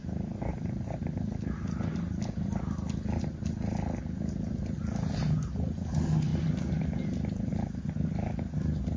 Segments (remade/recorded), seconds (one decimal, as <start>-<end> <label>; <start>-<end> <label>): 0.0-0.5 recorded; 0.5-3.2 remade; 3.2-6.3 recorded; 6.3-7.5 remade; 7.5-9.0 recorded